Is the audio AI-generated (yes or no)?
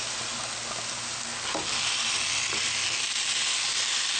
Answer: no